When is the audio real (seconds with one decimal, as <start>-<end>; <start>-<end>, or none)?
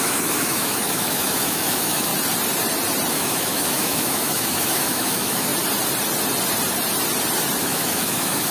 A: 2.1-3.1; 5.5-7.6